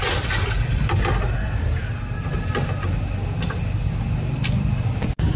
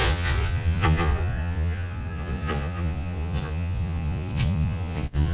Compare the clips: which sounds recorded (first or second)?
first